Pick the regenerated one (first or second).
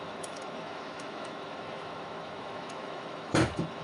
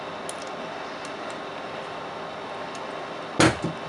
first